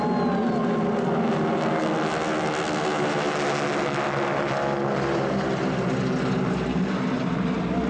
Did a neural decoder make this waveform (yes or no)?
no